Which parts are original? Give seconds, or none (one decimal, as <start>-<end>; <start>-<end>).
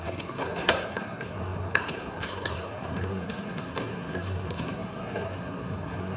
none